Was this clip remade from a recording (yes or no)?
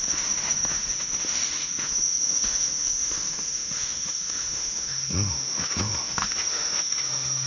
yes